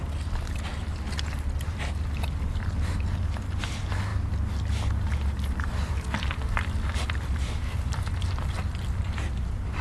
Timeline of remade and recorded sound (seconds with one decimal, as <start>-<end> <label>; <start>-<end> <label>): 0.0-9.8 recorded

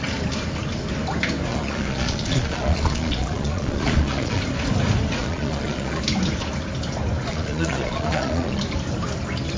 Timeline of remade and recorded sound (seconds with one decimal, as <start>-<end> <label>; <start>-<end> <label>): 0.0-1.5 recorded; 1.5-4.4 remade; 4.4-5.2 recorded; 5.2-6.0 remade; 6.0-7.3 recorded; 7.3-8.6 remade; 8.6-9.6 recorded

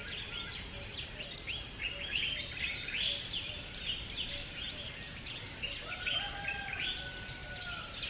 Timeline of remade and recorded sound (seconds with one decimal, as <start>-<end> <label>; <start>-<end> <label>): 0.0-8.1 recorded